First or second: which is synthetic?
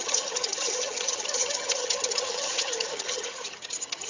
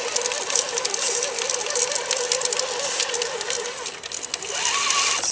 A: first